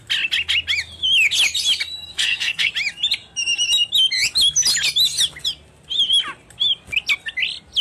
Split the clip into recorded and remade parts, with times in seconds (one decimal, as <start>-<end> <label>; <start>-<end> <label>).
0.0-2.1 recorded; 2.1-2.7 remade; 2.7-7.8 recorded